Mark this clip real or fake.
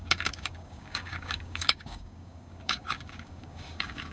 fake